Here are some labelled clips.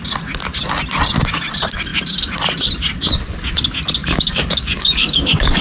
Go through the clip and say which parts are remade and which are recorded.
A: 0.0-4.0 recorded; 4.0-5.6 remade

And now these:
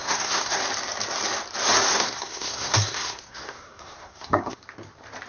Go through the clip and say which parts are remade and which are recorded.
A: 0.0-0.6 remade; 0.6-1.9 recorded; 1.9-4.6 remade; 4.6-5.3 recorded